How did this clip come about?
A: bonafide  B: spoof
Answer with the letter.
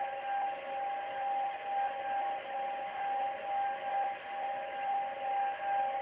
A